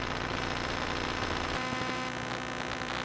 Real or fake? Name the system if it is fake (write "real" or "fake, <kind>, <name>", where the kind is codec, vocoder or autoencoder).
real